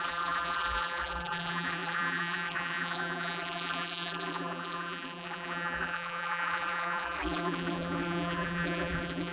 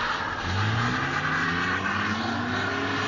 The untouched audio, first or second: second